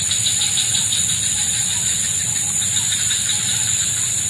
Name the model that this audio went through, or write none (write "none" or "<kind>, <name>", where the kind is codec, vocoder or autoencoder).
none